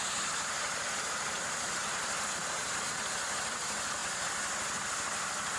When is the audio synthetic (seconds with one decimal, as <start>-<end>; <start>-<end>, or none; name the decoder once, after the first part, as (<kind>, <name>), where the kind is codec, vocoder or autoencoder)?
none